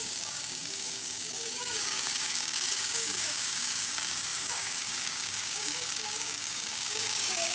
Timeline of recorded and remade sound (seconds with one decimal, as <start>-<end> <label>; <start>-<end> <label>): 0.0-7.5 remade